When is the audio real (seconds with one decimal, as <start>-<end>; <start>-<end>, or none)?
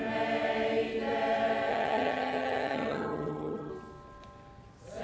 0.0-1.7; 3.7-5.0